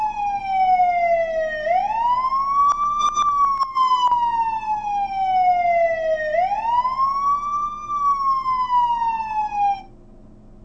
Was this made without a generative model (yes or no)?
yes